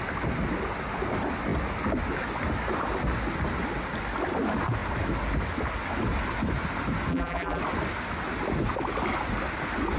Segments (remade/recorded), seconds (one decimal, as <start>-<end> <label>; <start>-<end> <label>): 0.0-7.1 recorded; 7.1-7.6 remade; 7.6-10.0 recorded